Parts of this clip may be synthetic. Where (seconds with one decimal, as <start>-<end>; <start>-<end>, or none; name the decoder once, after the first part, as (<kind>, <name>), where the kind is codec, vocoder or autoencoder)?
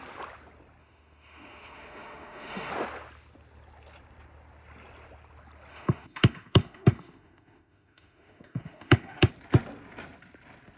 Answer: 0.8-2.7 (autoencoder, DAC-VAE); 5.7-9.3